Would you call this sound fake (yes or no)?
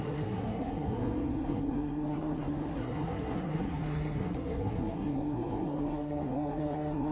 yes